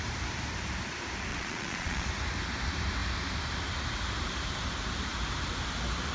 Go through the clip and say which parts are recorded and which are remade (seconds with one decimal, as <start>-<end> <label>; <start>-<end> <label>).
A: 0.0-1.3 recorded; 1.3-2.1 remade; 2.1-6.1 recorded